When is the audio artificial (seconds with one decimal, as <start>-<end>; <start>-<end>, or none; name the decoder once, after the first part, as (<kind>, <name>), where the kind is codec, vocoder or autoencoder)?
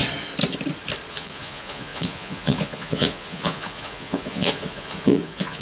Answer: 1.1-5.6 (vocoder, Vocos)